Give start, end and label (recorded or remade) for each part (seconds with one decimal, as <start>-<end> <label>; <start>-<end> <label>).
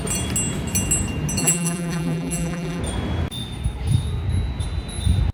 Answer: 0.0-1.4 recorded; 1.4-2.8 remade; 2.8-5.3 recorded